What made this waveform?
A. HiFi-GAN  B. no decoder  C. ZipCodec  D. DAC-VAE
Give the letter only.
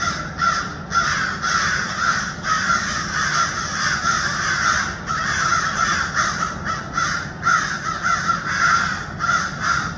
B